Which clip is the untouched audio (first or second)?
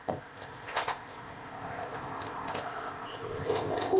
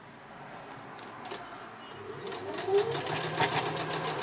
second